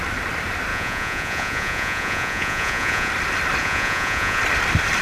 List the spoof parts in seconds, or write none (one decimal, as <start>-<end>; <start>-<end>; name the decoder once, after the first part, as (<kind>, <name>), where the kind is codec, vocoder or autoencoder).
0.7-3.1 (vocoder, Vocos); 3.6-4.4

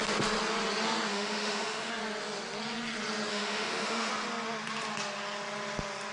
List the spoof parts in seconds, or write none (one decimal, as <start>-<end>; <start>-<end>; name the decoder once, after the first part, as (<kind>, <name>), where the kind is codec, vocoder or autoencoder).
1.1-1.9 (autoencoder, DAC-VAE); 3.3-4.1